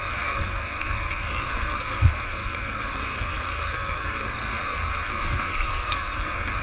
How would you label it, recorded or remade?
remade